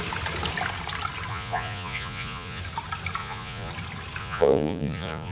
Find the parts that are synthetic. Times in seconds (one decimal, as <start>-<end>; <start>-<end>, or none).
1.3-2.6; 3.2-3.7; 4.2-5.3